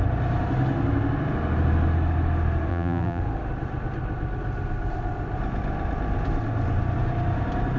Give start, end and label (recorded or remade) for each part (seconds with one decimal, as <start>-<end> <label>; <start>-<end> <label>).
0.0-2.7 recorded; 2.7-3.2 remade; 3.2-7.8 recorded